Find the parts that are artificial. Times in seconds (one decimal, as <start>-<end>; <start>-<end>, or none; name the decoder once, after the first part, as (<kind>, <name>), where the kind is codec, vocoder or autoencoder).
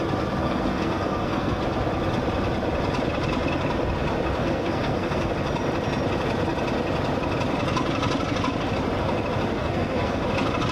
0.4-1.6 (codec, SNAC); 4.4-5.3; 9.6-10.2